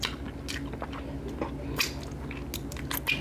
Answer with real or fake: real